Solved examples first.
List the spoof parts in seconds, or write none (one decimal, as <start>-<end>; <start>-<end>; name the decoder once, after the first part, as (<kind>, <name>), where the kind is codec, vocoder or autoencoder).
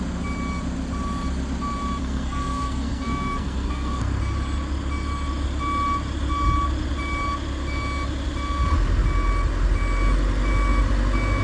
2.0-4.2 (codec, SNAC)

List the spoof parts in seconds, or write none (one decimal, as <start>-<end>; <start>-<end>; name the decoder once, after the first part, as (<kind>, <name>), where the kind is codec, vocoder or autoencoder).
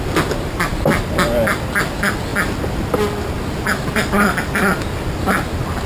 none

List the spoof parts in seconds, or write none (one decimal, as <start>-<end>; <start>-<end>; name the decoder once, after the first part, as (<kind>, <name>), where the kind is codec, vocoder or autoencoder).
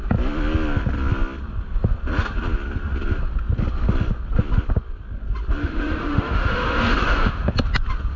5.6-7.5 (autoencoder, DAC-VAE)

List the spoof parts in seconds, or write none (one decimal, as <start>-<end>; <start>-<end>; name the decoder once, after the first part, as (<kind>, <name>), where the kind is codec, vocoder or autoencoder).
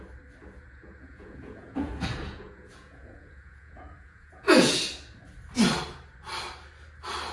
0.4-4.8 (vocoder, Vocos)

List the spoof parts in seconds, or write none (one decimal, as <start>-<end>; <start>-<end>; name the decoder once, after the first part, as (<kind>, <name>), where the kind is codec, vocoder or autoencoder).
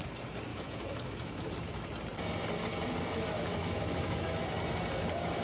0.5-1.5 (autoencoder, DAC-VAE); 3.5-4.4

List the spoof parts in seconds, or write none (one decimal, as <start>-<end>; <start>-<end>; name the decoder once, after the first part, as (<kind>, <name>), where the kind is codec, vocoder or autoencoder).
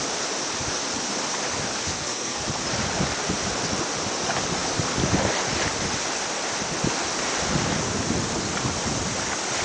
1.8-2.4 (codec, SNAC)